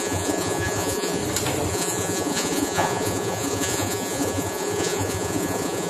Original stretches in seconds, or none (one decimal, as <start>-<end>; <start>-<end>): 1.2-1.7

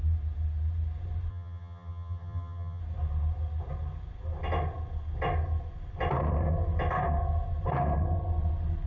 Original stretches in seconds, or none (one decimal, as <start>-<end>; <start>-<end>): 0.0-1.3; 2.8-8.9